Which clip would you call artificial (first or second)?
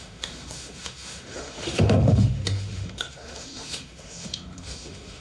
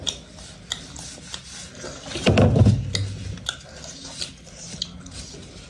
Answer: first